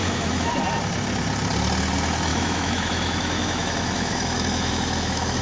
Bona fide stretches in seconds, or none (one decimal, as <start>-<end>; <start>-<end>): 0.5-2.3